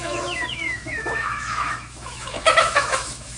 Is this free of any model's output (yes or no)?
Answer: no